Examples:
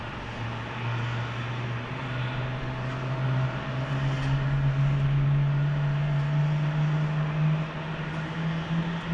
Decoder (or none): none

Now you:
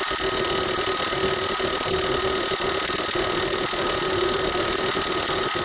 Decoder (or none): none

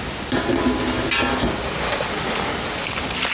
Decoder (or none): none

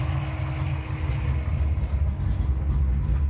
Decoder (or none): none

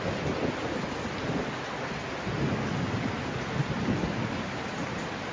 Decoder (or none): none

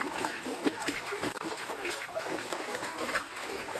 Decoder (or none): codec, DAC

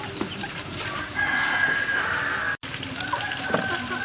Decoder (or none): none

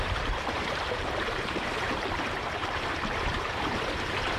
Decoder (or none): vocoder, BigVGAN v2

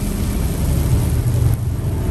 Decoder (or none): none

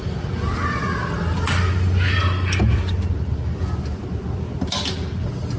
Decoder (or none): none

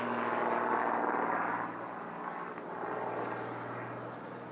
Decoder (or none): none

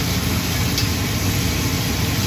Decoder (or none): none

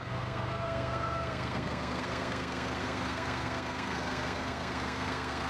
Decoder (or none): codec, SNAC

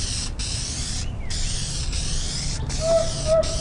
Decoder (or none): none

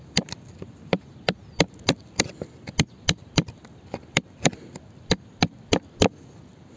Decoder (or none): none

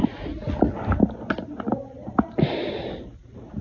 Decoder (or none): none